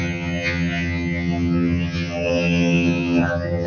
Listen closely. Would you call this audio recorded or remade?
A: remade